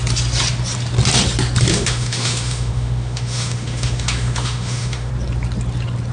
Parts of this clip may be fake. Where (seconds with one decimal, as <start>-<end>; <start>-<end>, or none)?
1.7-5.1